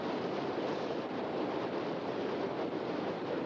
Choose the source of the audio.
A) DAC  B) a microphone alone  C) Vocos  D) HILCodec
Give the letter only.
B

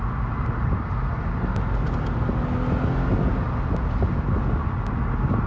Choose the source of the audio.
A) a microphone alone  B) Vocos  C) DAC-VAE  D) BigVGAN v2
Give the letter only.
A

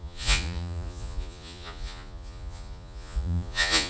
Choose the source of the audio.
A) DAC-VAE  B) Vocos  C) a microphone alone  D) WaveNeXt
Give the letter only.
B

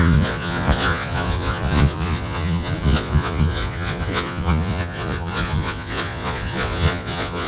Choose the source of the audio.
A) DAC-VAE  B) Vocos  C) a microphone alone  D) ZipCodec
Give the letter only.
B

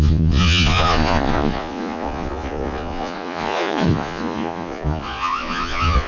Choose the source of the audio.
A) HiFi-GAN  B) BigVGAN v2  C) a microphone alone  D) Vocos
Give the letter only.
D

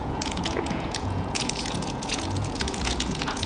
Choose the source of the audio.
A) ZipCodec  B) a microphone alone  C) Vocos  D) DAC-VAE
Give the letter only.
C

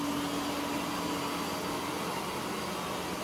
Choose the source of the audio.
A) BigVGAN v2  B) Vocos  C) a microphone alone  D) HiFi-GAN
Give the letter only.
C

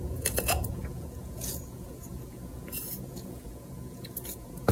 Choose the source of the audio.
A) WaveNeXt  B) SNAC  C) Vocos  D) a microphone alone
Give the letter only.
C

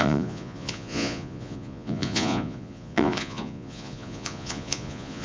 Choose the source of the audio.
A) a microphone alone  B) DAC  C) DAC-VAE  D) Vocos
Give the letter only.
D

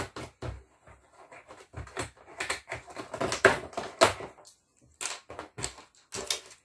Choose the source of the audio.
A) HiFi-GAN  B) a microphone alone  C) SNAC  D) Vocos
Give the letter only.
B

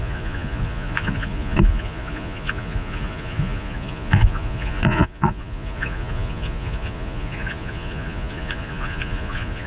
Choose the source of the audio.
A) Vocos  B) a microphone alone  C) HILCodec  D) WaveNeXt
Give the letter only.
A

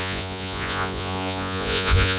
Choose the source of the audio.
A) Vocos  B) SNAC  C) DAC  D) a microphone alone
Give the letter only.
A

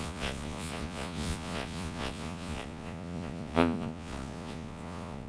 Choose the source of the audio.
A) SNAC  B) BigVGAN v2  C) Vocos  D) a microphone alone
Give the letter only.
C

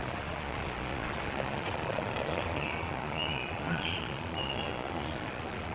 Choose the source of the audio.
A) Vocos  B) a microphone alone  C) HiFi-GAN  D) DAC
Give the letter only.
A